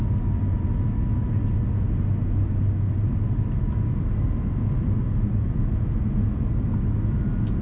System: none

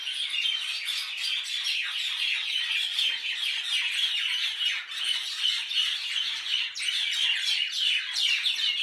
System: none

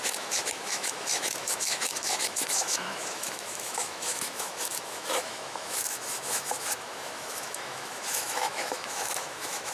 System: autoencoder, DAC-VAE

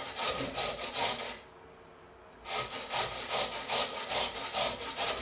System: none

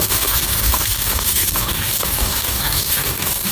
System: codec, DAC